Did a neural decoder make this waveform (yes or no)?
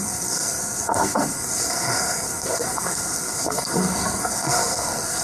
yes